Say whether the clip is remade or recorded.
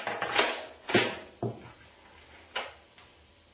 recorded